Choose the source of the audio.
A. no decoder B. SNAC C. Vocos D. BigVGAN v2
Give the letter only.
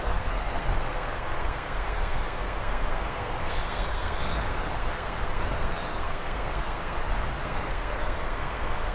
B